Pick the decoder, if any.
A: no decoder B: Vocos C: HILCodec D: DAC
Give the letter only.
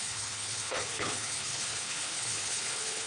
C